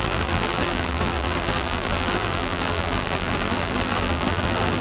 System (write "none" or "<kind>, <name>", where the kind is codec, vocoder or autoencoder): vocoder, BigVGAN v2